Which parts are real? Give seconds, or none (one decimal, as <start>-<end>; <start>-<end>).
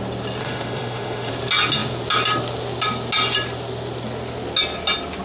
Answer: 0.0-0.4; 1.3-5.2